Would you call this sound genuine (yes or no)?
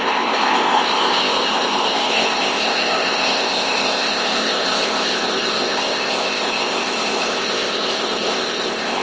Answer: no